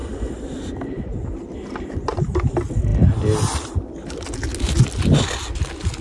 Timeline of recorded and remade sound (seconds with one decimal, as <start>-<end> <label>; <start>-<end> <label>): 0.0-6.0 recorded